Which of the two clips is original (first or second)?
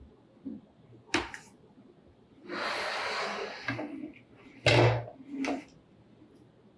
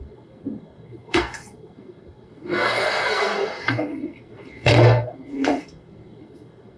first